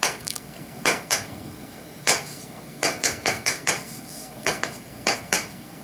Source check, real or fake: fake